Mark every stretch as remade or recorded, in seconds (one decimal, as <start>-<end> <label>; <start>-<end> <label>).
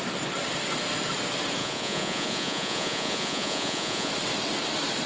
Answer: 0.0-1.6 recorded; 1.6-4.1 remade; 4.1-5.1 recorded